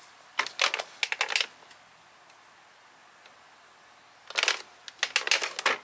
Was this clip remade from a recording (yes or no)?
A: no